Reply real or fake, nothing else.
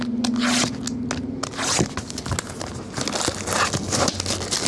real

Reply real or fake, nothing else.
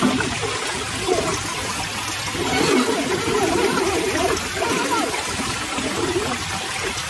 real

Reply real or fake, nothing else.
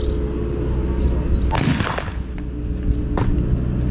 real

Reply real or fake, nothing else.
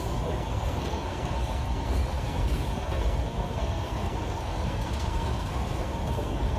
fake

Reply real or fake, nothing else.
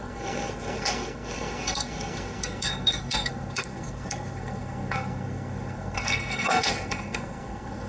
fake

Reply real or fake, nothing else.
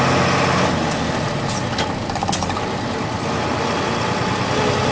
real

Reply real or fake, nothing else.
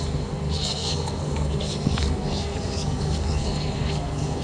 fake